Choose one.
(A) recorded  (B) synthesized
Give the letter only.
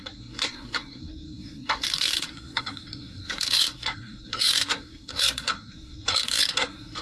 B